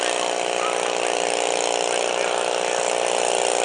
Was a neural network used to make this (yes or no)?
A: no